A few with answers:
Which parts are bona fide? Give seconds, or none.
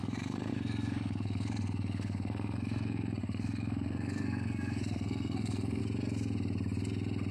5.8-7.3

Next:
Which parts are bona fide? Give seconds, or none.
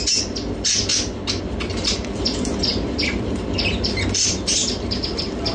0.9-1.4